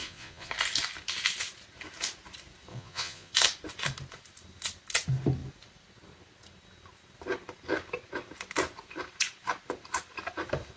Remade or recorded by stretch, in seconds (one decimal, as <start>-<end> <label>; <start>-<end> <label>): 0.0-0.5 remade; 0.5-2.7 recorded; 2.7-3.3 remade; 3.3-10.8 recorded